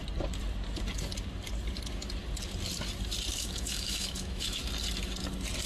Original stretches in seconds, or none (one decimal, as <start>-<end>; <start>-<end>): 0.0-3.4; 4.6-5.7